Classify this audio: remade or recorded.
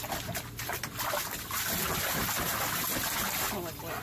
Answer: recorded